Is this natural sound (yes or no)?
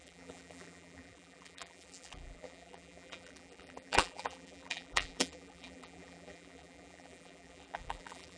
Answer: no